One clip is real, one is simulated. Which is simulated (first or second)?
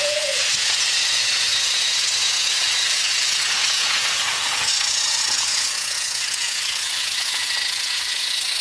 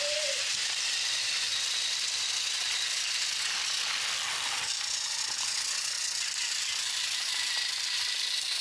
first